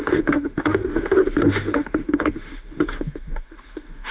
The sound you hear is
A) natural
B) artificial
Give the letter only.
B